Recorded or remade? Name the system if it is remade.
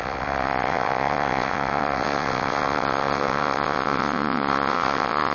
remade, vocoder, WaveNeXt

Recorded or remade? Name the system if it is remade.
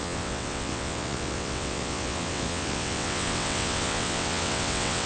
remade, vocoder, WaveNeXt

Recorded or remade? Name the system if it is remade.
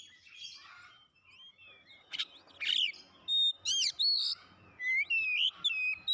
recorded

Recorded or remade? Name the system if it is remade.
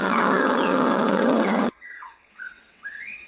remade, vocoder, WaveNeXt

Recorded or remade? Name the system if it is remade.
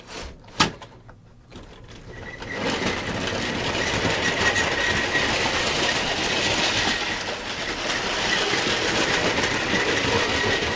recorded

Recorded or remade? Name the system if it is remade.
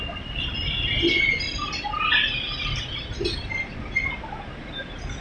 recorded